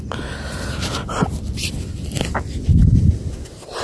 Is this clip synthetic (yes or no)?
no